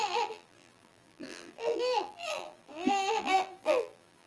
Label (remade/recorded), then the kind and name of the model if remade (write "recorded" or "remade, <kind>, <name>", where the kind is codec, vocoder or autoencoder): remade, vocoder, BigVGAN v2